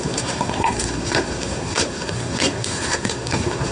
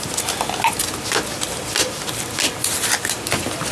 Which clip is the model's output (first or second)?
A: first